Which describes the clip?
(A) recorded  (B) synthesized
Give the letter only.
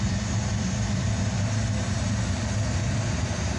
A